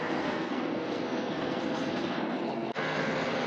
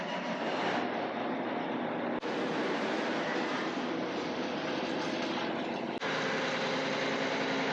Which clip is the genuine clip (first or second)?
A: second